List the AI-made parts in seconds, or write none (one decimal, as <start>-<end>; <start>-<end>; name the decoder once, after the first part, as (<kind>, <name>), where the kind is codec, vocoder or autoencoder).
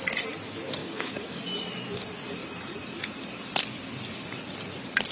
0.8-1.4 (codec, DAC)